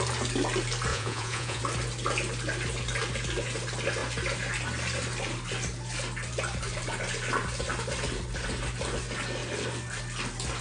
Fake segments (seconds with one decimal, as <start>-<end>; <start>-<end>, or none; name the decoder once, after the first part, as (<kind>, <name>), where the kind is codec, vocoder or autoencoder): 0.9-1.6 (vocoder, Vocos)